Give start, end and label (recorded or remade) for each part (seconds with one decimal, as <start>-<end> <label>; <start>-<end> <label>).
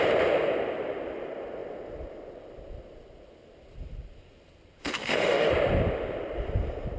0.0-4.8 recorded; 4.8-5.5 remade; 5.5-7.0 recorded